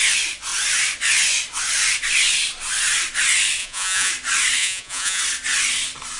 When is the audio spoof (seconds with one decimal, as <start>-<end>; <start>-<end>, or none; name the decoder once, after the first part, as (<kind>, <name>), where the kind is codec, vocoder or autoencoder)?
3.6-4.1 (vocoder, Vocos); 4.6-5.2